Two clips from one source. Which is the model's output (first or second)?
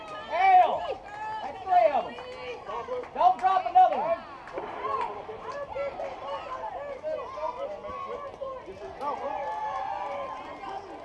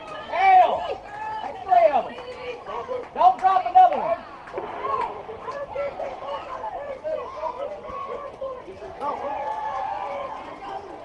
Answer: second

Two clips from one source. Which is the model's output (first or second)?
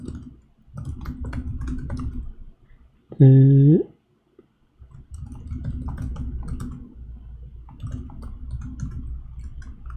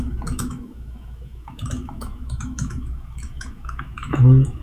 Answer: second